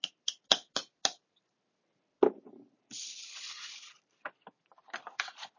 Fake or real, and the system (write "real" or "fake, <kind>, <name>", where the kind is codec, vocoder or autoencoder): real